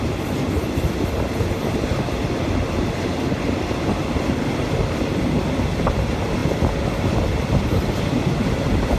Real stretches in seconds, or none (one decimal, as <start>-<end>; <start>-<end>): 0.0-9.0